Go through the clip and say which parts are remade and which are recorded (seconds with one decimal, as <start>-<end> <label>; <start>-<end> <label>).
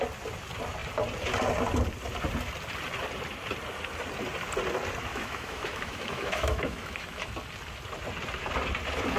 0.0-5.1 recorded; 5.1-7.3 remade; 7.3-9.2 recorded